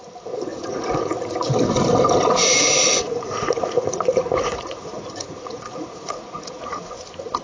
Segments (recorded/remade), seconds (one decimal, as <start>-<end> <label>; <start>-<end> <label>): 0.0-0.5 recorded; 0.5-1.5 remade; 1.5-2.6 recorded; 2.6-7.0 remade; 7.0-7.4 recorded